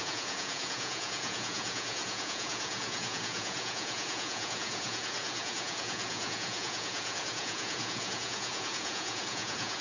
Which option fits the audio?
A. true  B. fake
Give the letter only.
B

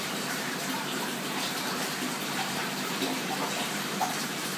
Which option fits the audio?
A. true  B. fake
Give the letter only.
B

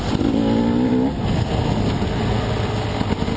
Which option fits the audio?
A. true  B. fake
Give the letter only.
A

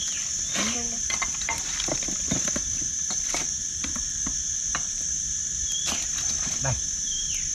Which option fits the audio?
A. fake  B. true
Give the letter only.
B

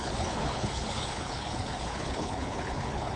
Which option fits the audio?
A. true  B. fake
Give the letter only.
B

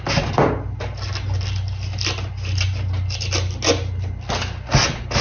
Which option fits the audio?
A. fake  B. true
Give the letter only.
B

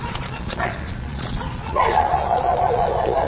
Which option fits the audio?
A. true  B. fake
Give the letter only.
B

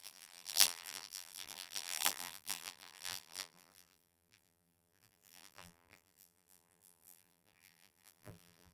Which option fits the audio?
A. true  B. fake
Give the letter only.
B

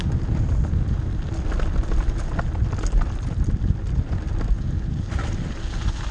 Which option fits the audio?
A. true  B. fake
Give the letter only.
A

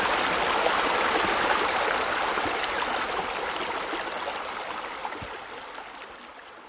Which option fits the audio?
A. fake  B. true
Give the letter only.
B